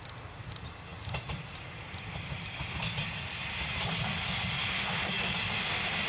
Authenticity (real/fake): real